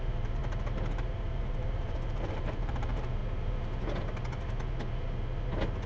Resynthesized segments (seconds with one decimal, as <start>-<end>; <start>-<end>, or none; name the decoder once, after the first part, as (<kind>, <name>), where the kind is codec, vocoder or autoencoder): 0.0-0.4 (vocoder, BigVGAN v2); 0.9-3.2

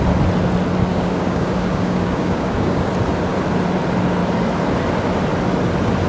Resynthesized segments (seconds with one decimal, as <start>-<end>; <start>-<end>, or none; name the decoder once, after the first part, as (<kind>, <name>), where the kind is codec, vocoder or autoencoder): 0.9-2.9 (codec, DAC)